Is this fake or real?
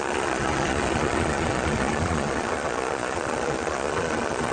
fake